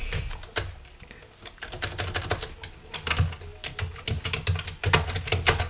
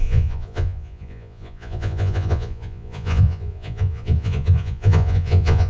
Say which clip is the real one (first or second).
first